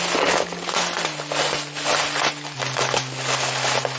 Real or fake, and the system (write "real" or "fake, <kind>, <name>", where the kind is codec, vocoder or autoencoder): real